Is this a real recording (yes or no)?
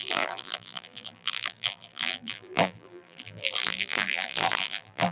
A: no